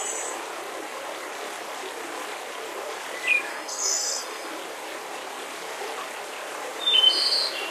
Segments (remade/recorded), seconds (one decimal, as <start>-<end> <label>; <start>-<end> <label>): 0.0-3.5 recorded; 3.5-4.5 remade; 4.5-7.7 recorded